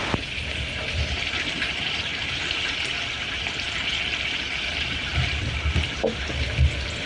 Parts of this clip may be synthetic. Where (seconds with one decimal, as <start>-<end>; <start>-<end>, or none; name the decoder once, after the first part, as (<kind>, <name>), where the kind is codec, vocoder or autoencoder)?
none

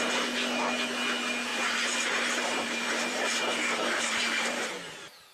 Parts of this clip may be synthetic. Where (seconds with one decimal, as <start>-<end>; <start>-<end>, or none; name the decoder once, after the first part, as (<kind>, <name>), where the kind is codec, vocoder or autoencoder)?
1.5-4.7 (vocoder, BigVGAN v2)

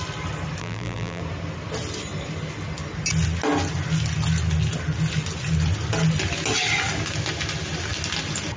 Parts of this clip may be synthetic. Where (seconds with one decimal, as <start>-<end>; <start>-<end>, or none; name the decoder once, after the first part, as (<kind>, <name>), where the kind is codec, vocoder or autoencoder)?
0.6-1.2 (vocoder, BigVGAN v2)